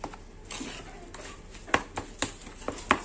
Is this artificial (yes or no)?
no